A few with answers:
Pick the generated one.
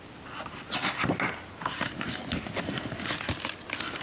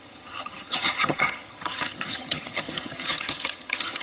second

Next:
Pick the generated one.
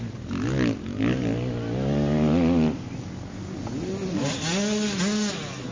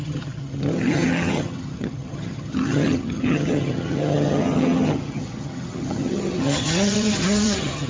second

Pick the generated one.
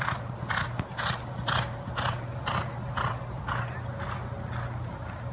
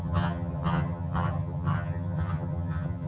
second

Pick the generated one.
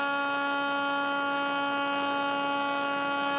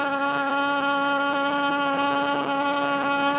second